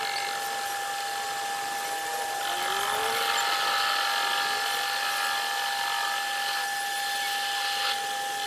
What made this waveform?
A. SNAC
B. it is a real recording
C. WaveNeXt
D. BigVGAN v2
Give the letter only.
B